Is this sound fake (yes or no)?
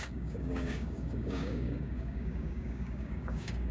yes